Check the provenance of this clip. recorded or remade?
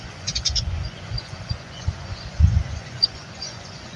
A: remade